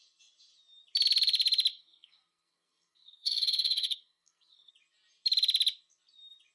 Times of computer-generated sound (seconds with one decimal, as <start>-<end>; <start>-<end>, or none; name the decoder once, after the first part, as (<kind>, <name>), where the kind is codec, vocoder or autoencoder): 1.7-4.7 (codec, SNAC)

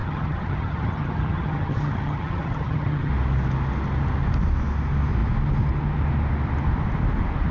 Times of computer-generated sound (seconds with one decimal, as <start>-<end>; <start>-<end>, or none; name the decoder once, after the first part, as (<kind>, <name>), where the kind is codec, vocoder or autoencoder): 0.0-3.1 (vocoder, HiFi-GAN)

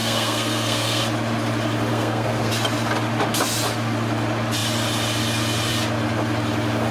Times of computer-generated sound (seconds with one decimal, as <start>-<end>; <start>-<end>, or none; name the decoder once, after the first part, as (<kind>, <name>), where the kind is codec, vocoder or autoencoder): 0.0-1.0 (codec, SNAC); 1.9-2.5

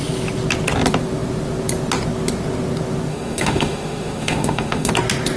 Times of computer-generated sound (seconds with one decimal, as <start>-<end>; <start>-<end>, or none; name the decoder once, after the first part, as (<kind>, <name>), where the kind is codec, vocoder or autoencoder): 3.1-4.9 (autoencoder, DAC-VAE)

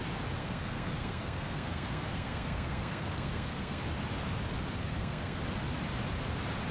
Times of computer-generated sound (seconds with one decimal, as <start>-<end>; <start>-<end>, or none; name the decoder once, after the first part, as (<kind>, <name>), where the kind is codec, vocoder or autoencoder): 0.4-3.8 (codec, SNAC); 4.8-5.4

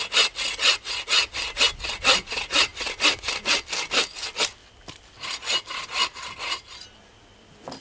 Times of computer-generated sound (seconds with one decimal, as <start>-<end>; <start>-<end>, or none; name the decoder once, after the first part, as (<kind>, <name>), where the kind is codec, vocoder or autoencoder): none

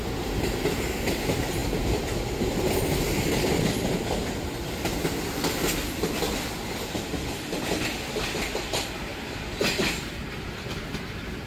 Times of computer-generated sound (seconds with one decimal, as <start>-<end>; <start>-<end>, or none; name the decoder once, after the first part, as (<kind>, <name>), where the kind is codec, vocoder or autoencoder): none

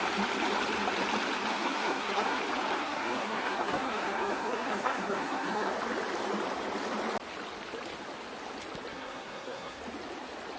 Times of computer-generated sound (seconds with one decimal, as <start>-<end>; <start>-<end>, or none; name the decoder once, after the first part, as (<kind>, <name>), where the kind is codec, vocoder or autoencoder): 1.5-2.4 (codec, SNAC); 2.8-5.7; 8.9-9.8